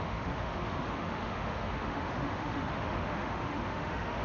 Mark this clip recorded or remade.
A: remade